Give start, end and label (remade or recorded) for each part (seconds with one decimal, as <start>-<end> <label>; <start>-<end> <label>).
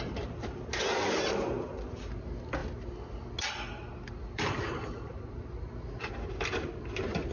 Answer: 0.0-7.3 recorded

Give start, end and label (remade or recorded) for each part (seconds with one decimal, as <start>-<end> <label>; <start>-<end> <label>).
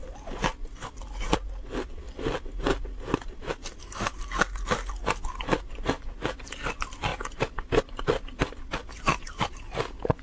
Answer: 0.0-10.2 recorded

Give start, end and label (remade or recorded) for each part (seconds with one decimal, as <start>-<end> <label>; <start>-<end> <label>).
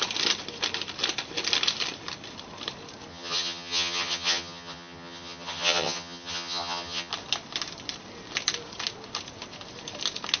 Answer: 0.0-3.1 recorded; 3.1-7.1 remade; 7.1-10.4 recorded